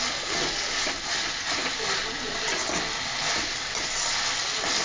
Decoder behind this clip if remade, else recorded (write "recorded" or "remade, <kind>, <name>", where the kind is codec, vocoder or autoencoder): recorded